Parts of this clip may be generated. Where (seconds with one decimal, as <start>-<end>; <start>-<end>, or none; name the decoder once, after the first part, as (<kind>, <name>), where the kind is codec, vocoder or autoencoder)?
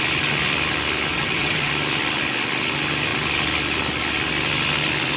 1.1-1.7 (vocoder, WaveNeXt)